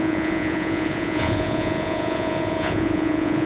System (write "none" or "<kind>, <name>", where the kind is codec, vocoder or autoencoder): vocoder, Vocos